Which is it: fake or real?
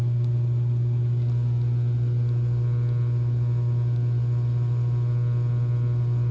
real